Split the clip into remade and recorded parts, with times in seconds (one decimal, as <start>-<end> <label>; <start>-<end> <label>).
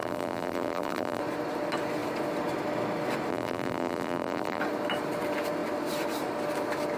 0.0-1.2 remade; 1.2-3.3 recorded; 3.3-4.6 remade; 4.6-7.0 recorded